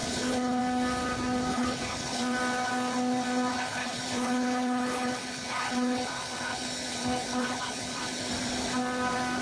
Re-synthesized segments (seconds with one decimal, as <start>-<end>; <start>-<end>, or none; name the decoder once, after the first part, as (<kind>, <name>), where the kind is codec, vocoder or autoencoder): 0.0-0.6 (codec, HILCodec); 1.5-2.2; 3.5-8.3

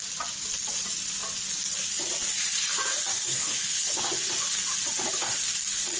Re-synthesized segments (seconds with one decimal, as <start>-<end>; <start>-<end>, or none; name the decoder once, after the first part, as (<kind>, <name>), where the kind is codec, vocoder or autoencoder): 3.3-4.0 (codec, HILCodec)

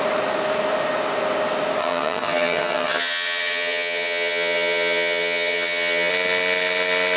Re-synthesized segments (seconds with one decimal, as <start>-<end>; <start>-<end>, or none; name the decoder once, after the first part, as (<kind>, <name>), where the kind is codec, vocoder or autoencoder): 1.8-6.1 (vocoder, HiFi-GAN)